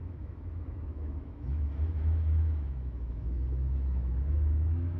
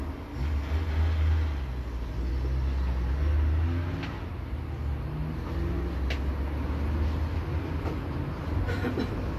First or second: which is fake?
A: first